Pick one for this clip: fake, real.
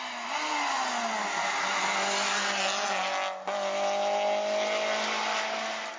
real